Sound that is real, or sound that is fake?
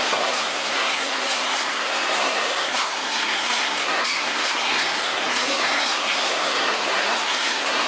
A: fake